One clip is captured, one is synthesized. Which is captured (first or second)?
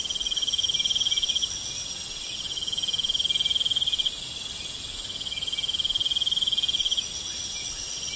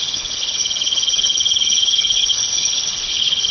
first